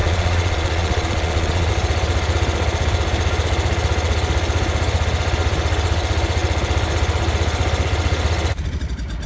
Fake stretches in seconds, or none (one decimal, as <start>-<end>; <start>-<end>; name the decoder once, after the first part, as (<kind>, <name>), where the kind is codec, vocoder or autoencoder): 0.0-1.7 (vocoder, Vocos)